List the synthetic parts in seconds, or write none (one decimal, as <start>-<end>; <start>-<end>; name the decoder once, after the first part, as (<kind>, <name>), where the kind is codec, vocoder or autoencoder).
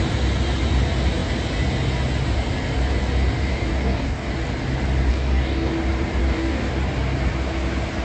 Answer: 3.5-4.3 (codec, DAC); 5.1-5.7; 6.2-6.7